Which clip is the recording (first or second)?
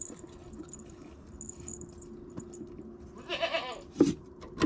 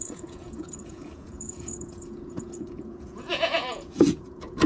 first